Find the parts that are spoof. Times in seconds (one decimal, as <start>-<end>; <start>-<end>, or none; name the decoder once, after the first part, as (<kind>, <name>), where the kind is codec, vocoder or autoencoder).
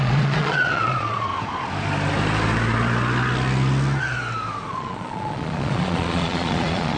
0.0-1.3 (vocoder, Vocos); 4.7-7.0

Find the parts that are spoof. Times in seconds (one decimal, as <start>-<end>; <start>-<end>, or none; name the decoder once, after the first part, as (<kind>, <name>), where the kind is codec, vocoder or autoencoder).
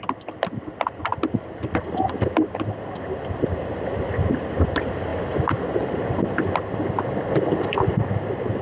none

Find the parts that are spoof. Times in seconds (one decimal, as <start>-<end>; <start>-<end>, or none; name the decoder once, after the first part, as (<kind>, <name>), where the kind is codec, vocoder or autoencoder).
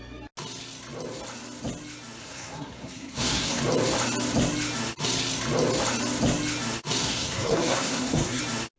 2.2-3.6 (codec, SNAC); 7.0-8.4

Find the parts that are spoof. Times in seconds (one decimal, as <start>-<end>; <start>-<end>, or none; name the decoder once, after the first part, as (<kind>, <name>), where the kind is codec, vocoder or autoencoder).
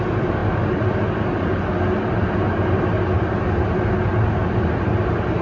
none